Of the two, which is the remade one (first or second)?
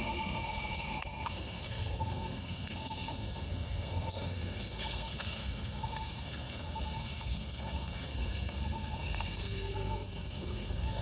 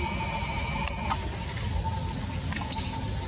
first